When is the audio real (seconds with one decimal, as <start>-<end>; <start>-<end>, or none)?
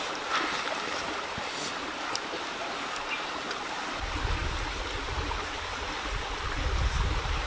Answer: 0.0-7.5